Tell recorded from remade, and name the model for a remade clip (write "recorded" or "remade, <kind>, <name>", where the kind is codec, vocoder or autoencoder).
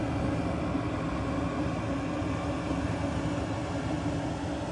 recorded